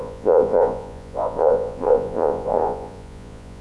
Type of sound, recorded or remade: remade